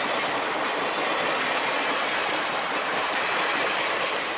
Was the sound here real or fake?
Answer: real